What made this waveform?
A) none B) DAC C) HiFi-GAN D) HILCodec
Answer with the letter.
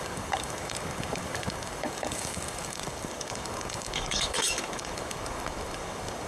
B